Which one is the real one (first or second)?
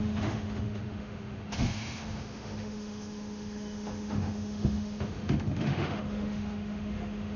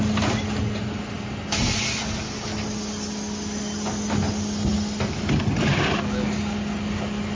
second